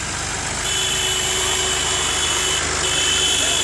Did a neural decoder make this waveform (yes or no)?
no